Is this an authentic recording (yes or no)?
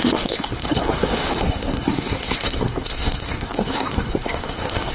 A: no